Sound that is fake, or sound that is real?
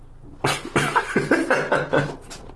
real